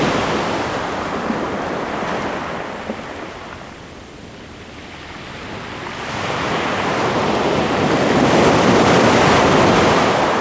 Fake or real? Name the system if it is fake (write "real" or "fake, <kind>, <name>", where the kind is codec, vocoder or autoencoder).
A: real